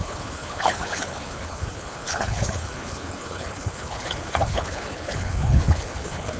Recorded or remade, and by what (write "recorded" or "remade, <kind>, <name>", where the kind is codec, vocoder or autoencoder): remade, codec, HILCodec